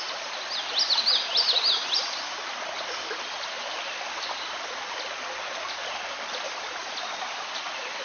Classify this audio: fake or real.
real